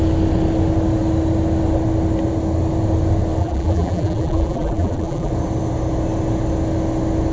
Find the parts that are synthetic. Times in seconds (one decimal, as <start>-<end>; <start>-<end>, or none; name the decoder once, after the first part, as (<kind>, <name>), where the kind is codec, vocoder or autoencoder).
3.4-5.3 (vocoder, BigVGAN v2)